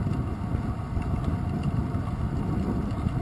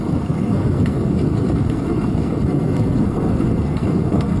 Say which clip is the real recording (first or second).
first